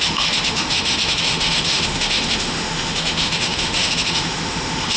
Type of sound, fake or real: fake